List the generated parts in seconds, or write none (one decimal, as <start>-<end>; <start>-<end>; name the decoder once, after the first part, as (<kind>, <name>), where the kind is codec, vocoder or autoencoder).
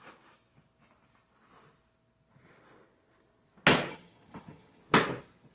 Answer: 3.9-4.8 (vocoder, HiFi-GAN)